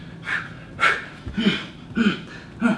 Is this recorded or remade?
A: recorded